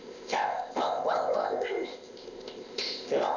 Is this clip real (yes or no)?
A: no